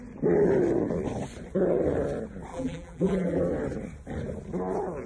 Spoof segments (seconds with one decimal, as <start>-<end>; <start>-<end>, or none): 2.5-3.4

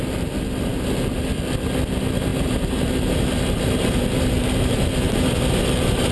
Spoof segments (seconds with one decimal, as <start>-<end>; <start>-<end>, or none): 2.3-6.1

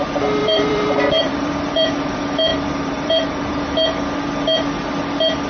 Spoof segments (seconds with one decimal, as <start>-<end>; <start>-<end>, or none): 0.4-1.9; 2.5-3.6

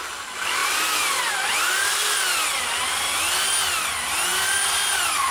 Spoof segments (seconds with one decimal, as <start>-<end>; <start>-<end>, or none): none

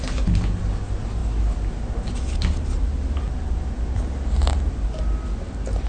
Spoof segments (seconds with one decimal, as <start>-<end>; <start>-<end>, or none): none

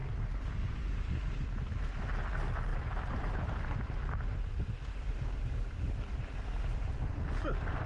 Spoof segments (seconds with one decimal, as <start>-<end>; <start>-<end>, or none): 2.7-5.2